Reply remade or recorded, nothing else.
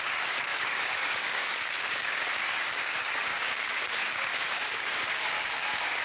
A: remade